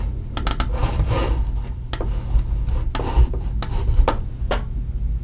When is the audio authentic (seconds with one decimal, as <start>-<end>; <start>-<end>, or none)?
0.0-5.2